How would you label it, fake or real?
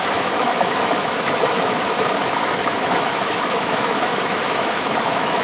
fake